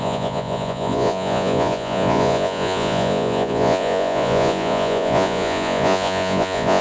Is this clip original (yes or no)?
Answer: no